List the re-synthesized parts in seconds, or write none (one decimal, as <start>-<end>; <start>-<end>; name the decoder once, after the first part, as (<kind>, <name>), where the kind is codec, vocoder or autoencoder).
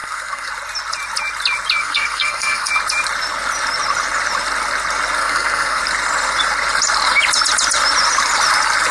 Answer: 0.0-0.5 (codec, SNAC); 1.8-2.7; 5.2-5.8